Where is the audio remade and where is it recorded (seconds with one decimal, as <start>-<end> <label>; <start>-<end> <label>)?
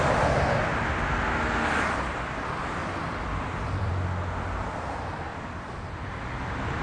0.0-2.8 recorded; 2.8-3.9 remade; 3.9-5.3 recorded; 5.3-6.1 remade; 6.1-6.8 recorded